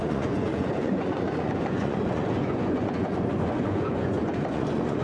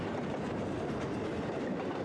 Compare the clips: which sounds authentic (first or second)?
second